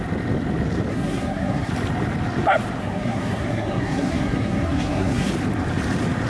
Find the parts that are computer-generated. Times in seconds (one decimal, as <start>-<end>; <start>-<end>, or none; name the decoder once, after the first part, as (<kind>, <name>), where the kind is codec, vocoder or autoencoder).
0.9-1.7 (codec, SNAC); 2.8-5.3